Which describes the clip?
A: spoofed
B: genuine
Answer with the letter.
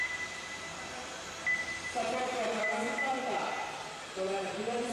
A